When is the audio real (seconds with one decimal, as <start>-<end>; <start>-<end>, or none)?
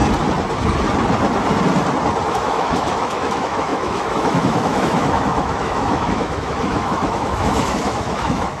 0.0-2.3